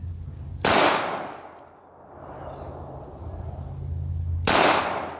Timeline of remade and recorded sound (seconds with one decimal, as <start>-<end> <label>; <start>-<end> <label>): 0.0-5.2 recorded